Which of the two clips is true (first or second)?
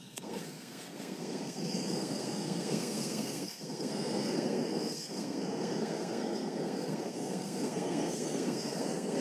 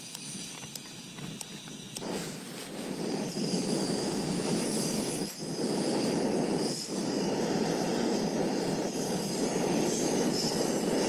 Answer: second